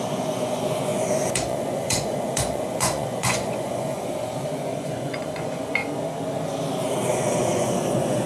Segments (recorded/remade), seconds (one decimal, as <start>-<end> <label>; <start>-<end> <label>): 0.0-5.8 remade; 5.8-7.1 recorded; 7.1-8.3 remade